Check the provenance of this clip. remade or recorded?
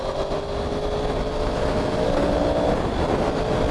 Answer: recorded